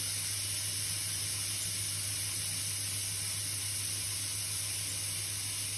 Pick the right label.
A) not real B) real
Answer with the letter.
B